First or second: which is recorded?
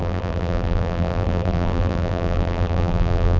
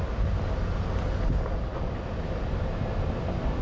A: second